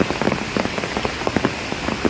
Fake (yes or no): no